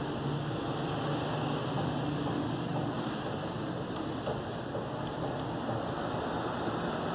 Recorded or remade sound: recorded